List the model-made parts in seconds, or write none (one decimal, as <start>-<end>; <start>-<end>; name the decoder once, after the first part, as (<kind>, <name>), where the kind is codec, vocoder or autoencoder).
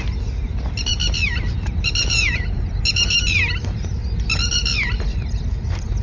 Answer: none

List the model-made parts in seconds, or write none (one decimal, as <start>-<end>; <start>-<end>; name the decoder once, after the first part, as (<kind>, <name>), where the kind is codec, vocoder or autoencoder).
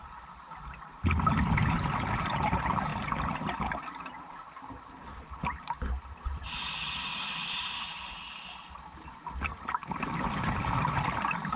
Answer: none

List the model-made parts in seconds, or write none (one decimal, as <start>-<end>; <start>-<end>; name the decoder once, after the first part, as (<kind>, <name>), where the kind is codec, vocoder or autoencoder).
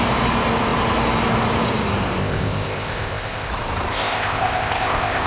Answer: 2.2-3.5 (codec, ZipCodec); 3.9-5.3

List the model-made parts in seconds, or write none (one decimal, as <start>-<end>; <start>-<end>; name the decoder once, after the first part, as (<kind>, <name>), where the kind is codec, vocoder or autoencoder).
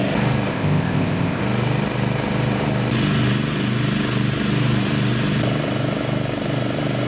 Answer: 0.5-1.4 (codec, ZipCodec)